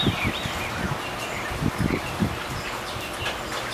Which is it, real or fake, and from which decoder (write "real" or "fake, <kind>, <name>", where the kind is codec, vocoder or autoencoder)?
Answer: real